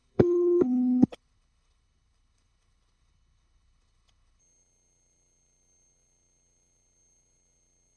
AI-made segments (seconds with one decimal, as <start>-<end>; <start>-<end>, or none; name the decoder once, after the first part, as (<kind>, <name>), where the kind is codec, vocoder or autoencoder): 0.0-4.4 (codec, HILCodec)